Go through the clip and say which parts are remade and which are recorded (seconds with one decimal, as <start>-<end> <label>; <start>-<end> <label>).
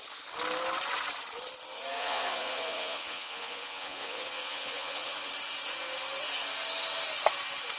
0.0-2.0 recorded; 2.0-5.3 remade; 5.3-7.8 recorded